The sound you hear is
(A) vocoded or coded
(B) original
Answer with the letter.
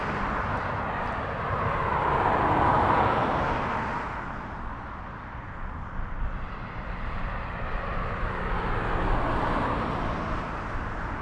B